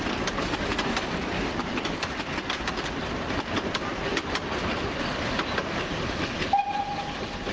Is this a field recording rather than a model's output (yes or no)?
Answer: yes